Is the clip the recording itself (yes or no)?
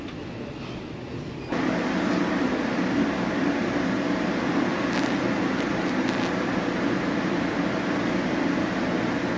yes